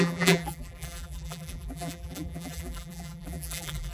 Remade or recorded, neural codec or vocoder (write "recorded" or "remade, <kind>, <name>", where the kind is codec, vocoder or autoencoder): remade, vocoder, BigVGAN v2